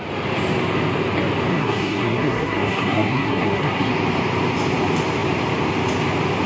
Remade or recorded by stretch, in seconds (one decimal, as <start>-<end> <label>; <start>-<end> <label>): 0.0-1.5 recorded; 1.5-3.9 remade; 3.9-6.5 recorded